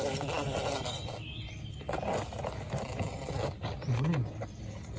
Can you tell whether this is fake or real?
real